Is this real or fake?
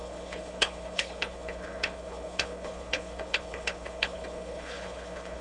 fake